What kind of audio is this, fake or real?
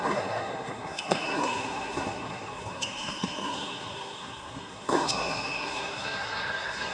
fake